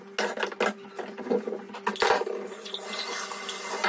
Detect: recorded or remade recorded